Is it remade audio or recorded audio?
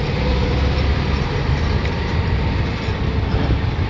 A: recorded